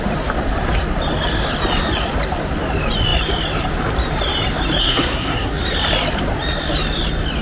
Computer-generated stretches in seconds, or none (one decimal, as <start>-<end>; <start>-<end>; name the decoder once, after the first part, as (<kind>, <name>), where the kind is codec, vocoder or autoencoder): 4.8-5.6 (codec, SNAC)